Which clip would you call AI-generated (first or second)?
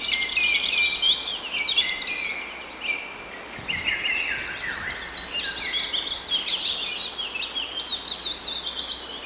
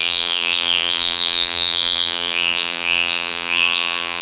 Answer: second